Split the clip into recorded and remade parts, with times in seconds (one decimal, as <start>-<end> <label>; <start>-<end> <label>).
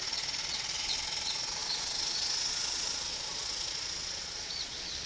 0.0-5.1 remade